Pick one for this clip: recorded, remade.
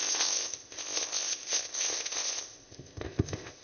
remade